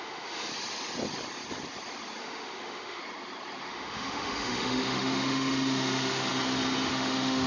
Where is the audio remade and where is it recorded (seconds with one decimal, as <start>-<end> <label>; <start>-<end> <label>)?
0.0-0.5 remade; 0.5-2.2 recorded; 2.2-3.0 remade; 3.0-3.7 recorded; 3.7-6.3 remade; 6.3-6.9 recorded; 6.9-7.5 remade